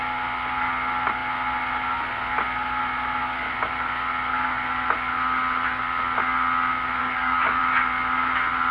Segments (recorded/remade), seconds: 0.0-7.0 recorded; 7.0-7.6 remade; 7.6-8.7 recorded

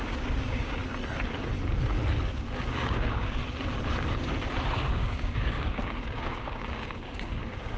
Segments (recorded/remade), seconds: 0.0-0.8 remade; 0.8-2.3 recorded; 2.3-3.4 remade; 3.4-4.7 recorded; 4.7-7.8 remade

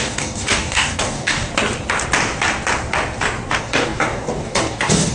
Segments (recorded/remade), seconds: 0.0-1.5 remade; 1.5-3.6 recorded; 3.6-5.1 remade

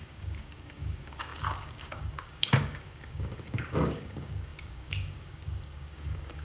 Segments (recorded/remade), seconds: 0.0-6.4 remade

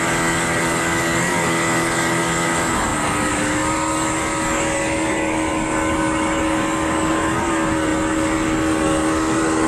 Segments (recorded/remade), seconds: 0.0-9.7 remade

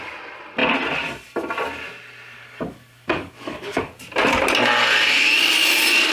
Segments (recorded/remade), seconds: 0.0-2.4 recorded; 2.4-3.9 remade; 3.9-6.1 recorded

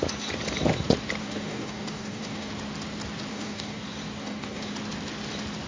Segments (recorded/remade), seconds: 0.0-1.2 recorded; 1.2-2.5 remade; 2.5-3.3 recorded; 3.3-3.8 remade; 3.8-4.2 recorded; 4.2-4.7 remade; 4.7-5.7 recorded